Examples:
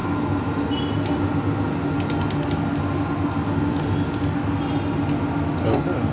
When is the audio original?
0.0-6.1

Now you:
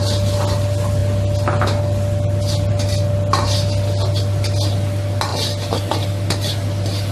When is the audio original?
0.0-7.1

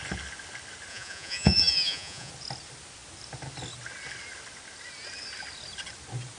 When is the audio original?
0.0-0.9; 2.3-6.4